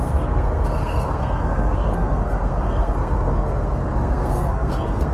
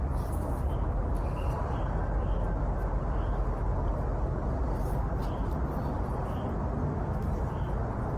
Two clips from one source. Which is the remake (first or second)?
first